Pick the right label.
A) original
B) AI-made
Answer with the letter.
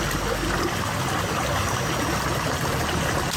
A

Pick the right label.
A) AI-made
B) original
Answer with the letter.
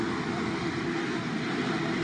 B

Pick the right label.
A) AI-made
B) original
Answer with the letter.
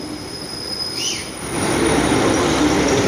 B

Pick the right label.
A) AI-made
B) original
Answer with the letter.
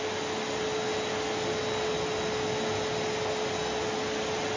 B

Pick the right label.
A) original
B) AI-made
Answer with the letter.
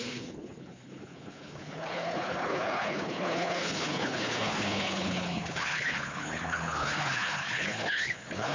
B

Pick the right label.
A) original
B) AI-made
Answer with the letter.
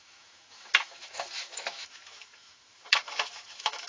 B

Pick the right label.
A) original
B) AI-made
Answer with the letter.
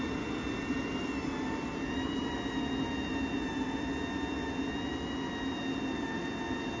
A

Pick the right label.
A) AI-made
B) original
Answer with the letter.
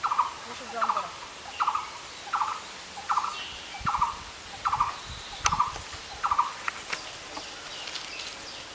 B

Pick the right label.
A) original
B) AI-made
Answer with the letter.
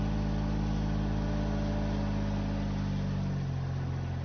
A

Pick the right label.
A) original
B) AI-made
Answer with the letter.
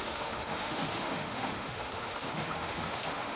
B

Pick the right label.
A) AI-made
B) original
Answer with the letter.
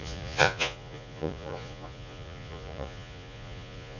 A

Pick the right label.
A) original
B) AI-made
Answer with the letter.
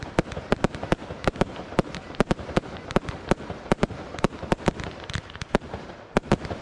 B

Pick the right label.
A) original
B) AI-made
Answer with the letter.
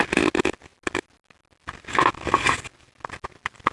A